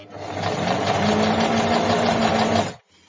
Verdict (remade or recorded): recorded